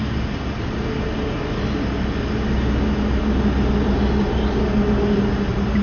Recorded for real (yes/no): yes